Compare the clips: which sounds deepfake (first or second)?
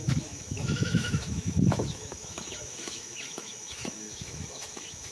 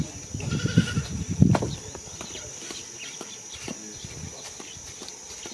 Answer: first